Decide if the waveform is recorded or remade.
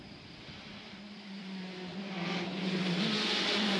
remade